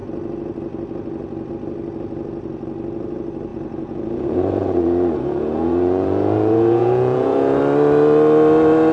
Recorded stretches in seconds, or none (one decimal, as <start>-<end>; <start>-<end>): 0.0-3.5; 7.6-8.9